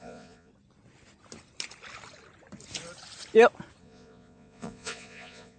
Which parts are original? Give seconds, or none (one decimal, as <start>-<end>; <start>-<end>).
0.5-3.8